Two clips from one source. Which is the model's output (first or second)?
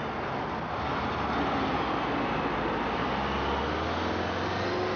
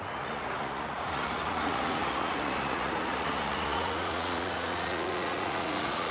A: second